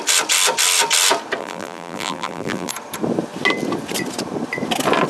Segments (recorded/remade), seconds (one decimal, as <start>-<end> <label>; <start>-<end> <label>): 0.0-1.4 recorded; 1.4-2.7 remade; 2.7-5.1 recorded